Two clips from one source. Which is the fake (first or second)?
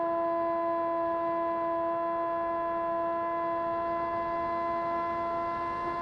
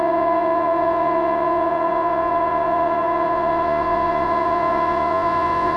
second